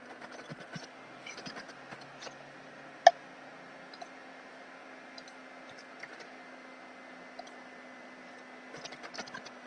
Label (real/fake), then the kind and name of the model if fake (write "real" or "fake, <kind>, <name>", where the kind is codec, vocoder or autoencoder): real